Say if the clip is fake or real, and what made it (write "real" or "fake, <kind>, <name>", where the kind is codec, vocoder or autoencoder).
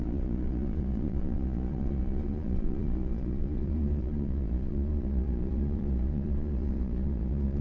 fake, vocoder, Vocos